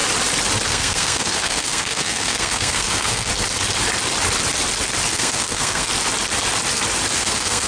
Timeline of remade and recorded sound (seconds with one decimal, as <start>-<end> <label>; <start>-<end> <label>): 0.0-0.7 recorded; 0.7-3.3 remade; 3.3-5.1 recorded; 5.1-5.9 remade; 5.9-7.1 recorded; 7.1-7.7 remade